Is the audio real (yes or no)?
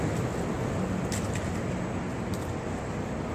yes